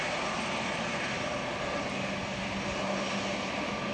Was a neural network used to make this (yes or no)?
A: no